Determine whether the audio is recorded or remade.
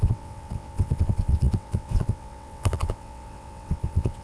remade